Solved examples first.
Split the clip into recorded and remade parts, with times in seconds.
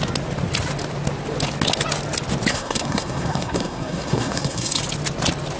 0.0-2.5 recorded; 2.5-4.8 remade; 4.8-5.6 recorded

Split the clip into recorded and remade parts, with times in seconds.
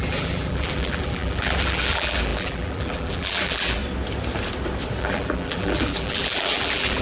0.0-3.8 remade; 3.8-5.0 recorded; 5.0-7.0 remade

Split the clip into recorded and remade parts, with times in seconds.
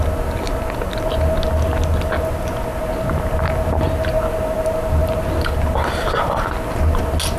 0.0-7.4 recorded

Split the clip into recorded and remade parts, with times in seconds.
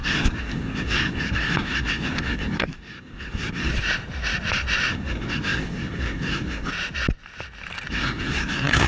0.0-3.7 remade; 3.7-4.9 recorded; 4.9-6.7 remade; 6.7-7.9 recorded; 7.9-8.9 remade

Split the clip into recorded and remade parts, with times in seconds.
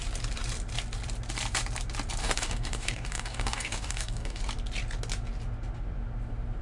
0.0-2.2 recorded; 2.2-4.4 remade; 4.4-6.6 recorded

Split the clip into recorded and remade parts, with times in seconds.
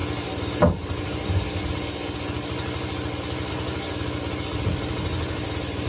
0.0-5.9 recorded